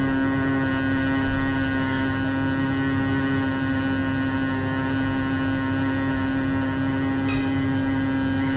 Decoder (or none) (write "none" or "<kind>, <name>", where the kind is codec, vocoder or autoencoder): none